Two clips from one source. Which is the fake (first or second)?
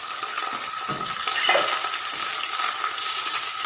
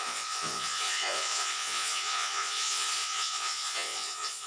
second